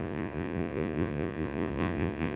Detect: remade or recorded remade